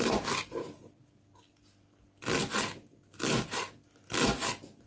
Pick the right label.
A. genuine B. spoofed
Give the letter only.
A